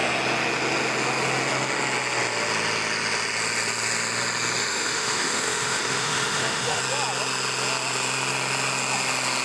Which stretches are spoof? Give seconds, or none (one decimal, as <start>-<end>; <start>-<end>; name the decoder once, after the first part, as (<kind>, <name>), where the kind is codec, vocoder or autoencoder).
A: 4.6-6.8 (autoencoder, DAC-VAE)